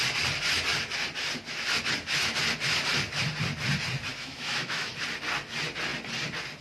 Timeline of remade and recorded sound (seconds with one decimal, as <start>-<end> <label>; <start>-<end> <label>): 0.0-4.1 recorded; 4.1-4.9 remade; 4.9-6.6 recorded